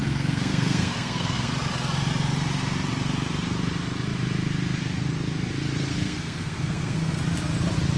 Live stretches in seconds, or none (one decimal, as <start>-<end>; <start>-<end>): 1.5-5.9; 7.2-8.0